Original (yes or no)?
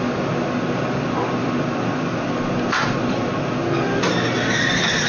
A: yes